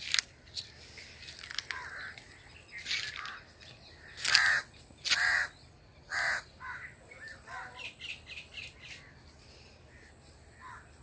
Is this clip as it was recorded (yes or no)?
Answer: yes